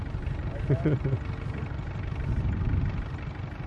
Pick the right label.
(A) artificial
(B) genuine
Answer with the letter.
B